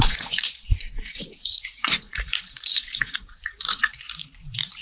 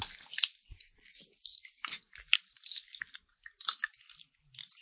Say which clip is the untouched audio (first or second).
second